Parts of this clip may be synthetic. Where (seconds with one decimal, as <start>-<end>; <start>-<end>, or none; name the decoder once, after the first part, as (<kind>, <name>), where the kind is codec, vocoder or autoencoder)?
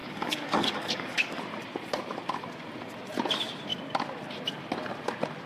0.0-1.4 (codec, DAC)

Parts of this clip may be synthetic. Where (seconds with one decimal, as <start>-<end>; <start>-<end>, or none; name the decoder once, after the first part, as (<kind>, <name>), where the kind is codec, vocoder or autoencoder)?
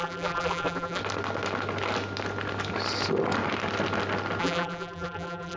0.0-1.0 (vocoder, BigVGAN v2); 4.4-5.6